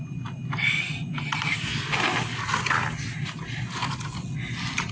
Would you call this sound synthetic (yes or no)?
no